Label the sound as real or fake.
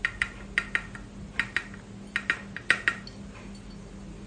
real